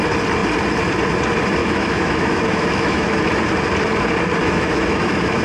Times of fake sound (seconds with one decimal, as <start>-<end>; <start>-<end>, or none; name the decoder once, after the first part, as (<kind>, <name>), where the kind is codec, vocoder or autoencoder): 1.6-3.2 (autoencoder, DAC-VAE); 4.4-5.4